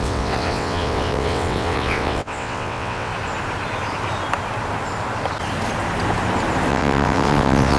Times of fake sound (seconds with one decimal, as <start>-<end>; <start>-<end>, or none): 0.0-3.1; 6.7-7.8